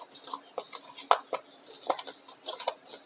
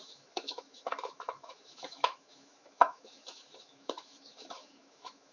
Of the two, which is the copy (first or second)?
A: second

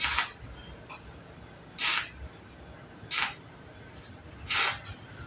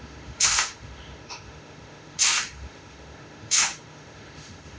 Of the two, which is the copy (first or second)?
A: second